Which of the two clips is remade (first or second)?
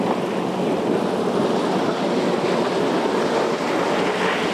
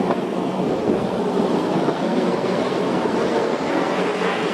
second